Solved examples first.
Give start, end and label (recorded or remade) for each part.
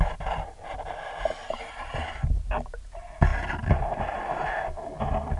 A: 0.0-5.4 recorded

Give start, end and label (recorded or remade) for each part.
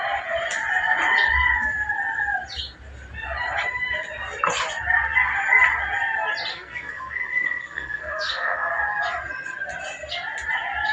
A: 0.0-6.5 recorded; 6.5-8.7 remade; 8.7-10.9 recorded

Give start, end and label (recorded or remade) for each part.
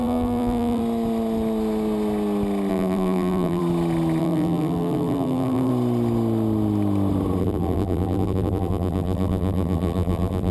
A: 0.0-0.8 remade; 0.8-2.7 recorded; 2.7-3.6 remade; 3.6-4.2 recorded; 4.2-5.7 remade; 5.7-7.4 recorded; 7.4-10.5 remade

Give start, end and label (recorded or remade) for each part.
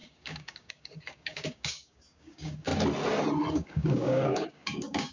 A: 0.0-2.7 remade; 2.7-3.5 recorded; 3.5-5.1 remade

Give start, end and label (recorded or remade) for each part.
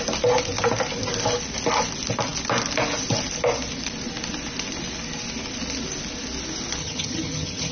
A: 0.0-6.8 recorded; 6.8-7.7 remade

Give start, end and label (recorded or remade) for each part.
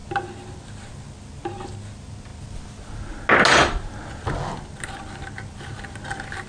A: 0.0-6.5 recorded